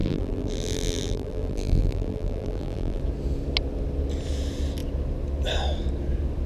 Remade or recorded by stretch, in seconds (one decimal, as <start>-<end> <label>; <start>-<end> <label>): 0.0-3.0 remade; 3.0-6.5 recorded